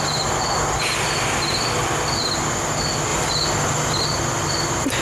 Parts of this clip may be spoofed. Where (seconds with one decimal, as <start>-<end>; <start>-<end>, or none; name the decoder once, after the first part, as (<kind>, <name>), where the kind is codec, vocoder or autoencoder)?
none